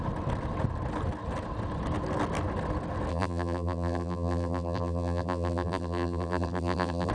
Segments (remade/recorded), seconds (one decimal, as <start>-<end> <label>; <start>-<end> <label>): 0.0-3.1 recorded; 3.1-7.1 remade